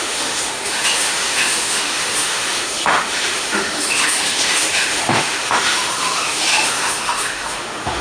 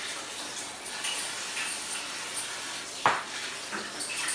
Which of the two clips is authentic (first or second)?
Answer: second